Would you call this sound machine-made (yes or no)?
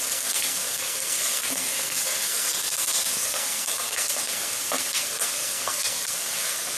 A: yes